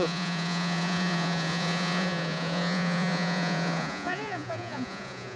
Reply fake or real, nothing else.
fake